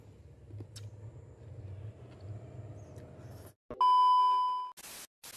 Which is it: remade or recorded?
recorded